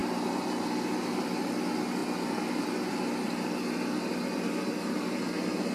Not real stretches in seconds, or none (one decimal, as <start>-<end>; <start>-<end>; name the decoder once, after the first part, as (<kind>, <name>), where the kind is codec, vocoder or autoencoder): none